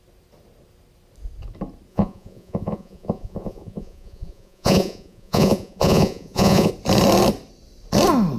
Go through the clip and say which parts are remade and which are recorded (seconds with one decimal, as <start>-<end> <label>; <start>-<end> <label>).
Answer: 0.0-1.9 recorded; 1.9-6.7 remade; 6.7-8.4 recorded